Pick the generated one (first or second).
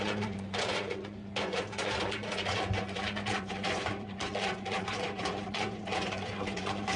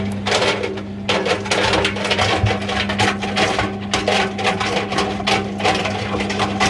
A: first